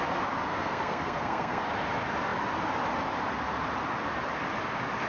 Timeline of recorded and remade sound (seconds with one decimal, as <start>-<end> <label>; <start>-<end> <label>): 0.0-0.5 recorded; 0.5-1.7 remade; 1.7-5.1 recorded